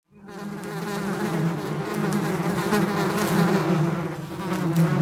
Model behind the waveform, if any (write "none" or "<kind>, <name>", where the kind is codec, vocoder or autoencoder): none